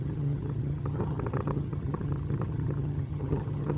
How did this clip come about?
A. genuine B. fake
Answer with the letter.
B